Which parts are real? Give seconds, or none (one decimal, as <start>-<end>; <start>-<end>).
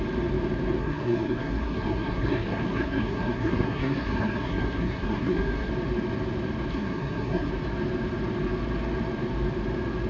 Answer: 0.0-0.8; 5.7-6.7; 7.5-10.1